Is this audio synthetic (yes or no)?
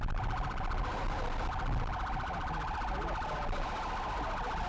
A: yes